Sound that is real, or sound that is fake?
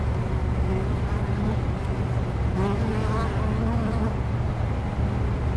real